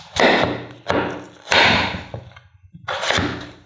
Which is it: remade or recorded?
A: recorded